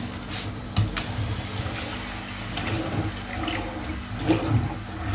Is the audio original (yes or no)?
yes